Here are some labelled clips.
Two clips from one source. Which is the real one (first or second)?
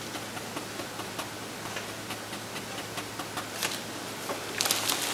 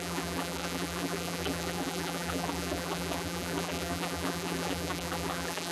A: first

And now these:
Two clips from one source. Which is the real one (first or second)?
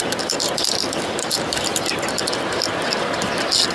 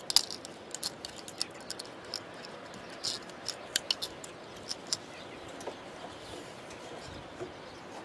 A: second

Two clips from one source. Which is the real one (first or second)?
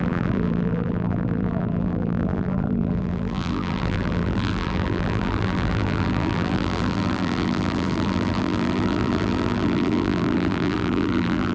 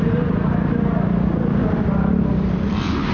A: second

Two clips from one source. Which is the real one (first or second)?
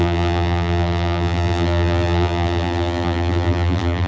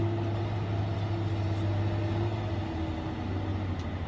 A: second